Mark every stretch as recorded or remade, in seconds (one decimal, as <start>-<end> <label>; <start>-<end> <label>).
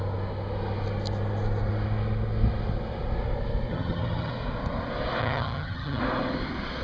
0.0-3.7 recorded; 3.7-4.3 remade; 4.3-5.2 recorded; 5.2-6.0 remade; 6.0-6.8 recorded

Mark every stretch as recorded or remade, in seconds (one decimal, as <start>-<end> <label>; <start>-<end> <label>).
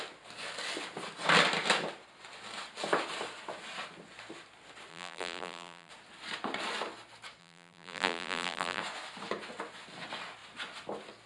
0.0-4.9 recorded; 4.9-5.9 remade; 5.9-7.4 recorded; 7.4-8.8 remade; 8.8-11.3 recorded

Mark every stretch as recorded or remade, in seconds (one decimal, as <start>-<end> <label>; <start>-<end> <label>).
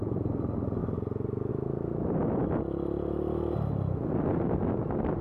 0.0-5.2 recorded